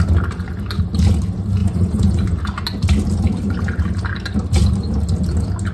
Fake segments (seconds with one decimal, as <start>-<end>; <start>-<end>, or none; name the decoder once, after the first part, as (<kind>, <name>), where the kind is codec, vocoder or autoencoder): 1.6-2.4 (vocoder, Vocos)